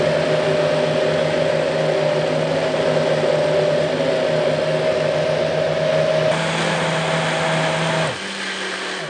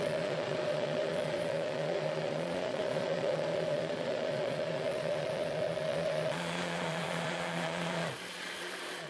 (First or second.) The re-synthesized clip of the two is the second